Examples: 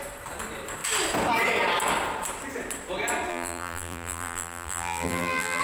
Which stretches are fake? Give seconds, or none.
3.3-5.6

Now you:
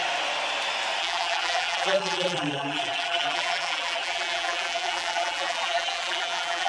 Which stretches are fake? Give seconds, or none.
1.0-6.7